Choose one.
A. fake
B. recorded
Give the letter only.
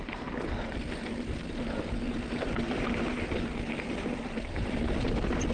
B